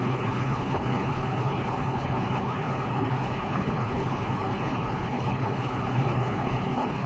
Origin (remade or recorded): remade